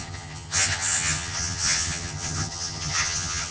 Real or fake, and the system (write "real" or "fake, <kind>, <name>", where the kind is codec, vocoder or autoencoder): fake, vocoder, HiFi-GAN